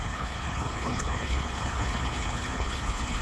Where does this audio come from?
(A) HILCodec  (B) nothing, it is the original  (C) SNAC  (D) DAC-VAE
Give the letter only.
A